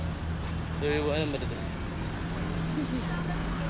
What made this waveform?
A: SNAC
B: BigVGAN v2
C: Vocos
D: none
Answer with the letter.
D